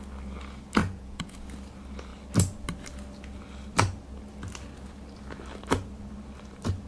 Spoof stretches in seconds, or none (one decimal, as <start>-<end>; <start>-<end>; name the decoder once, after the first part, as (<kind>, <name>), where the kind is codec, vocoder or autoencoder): 0.8-1.4 (vocoder, Vocos)